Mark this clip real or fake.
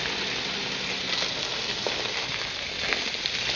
real